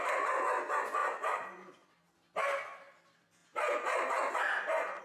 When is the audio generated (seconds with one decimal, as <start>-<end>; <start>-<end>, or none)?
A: 1.0-1.7; 3.4-5.0